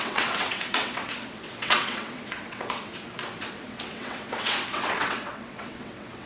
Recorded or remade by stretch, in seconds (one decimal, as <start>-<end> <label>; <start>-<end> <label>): 0.0-2.9 remade; 2.9-3.4 recorded; 3.4-6.3 remade